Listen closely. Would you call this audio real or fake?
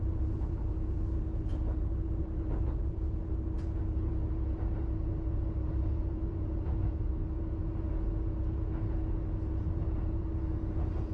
fake